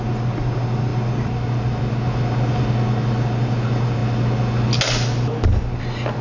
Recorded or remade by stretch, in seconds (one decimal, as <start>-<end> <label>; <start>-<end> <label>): 0.0-6.2 recorded

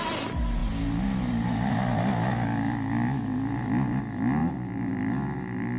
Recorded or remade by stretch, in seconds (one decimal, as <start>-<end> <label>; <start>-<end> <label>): 0.0-5.8 recorded

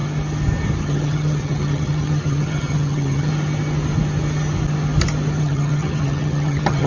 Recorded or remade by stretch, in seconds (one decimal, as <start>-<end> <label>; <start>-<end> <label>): 0.0-0.8 recorded; 0.8-3.3 remade; 3.3-5.4 recorded; 5.4-6.9 remade